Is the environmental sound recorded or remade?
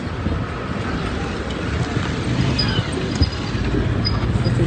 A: recorded